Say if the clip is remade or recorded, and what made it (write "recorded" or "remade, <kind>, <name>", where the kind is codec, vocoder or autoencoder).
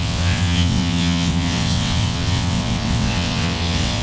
remade, vocoder, WaveNeXt